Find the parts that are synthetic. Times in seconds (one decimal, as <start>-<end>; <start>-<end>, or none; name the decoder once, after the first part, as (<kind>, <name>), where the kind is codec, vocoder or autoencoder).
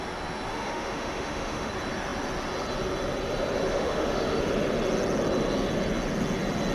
0.5-1.7 (autoencoder, DAC-VAE); 3.7-4.4